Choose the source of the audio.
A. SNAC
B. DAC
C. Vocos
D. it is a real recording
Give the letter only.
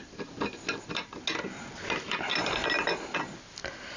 D